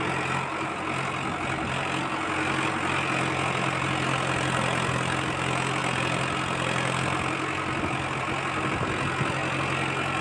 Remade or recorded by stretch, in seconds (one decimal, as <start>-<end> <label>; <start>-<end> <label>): 0.0-10.2 recorded